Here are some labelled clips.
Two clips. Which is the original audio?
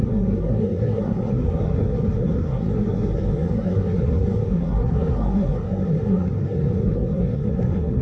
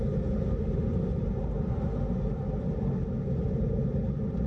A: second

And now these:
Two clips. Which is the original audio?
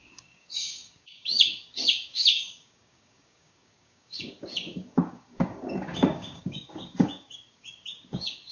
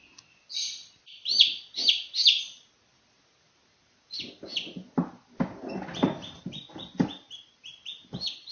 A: second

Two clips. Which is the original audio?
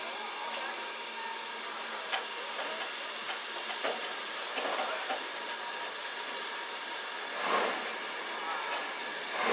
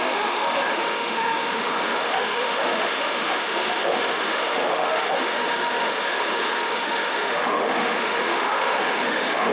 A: first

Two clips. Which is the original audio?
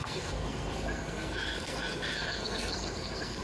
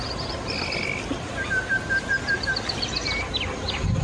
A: second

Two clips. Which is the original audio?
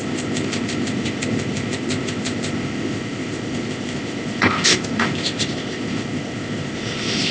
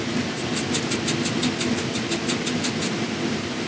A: second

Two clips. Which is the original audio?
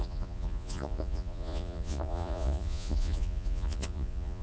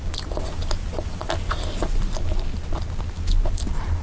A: second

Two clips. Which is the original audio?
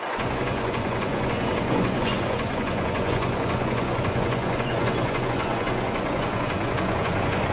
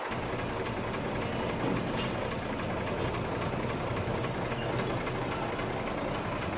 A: second